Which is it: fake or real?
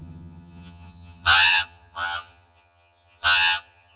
fake